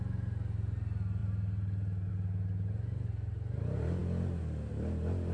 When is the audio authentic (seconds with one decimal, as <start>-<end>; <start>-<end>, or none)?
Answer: 0.0-5.3